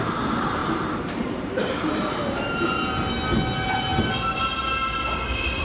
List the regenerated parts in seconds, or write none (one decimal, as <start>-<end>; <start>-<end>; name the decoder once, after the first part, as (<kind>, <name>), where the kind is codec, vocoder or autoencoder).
0.6-3.1 (vocoder, BigVGAN v2)